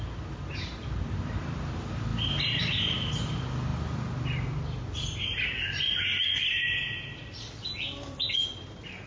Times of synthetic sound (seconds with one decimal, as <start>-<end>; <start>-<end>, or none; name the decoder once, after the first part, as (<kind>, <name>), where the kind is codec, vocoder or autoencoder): none